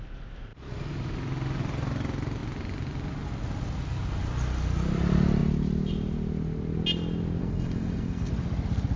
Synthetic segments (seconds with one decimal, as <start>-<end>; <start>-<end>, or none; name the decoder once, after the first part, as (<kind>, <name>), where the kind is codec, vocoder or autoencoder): 7.4-8.3 (codec, SNAC)